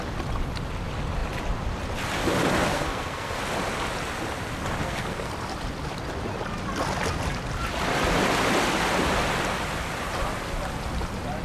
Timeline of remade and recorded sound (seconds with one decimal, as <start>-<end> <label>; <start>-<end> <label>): 0.0-2.7 recorded; 2.7-3.4 remade; 3.4-4.8 recorded; 4.8-5.3 remade; 5.3-11.4 recorded